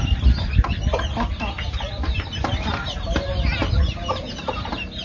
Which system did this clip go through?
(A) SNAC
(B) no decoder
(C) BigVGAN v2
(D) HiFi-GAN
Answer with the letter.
B